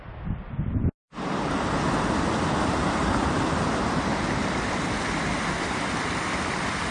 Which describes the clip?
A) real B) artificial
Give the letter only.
A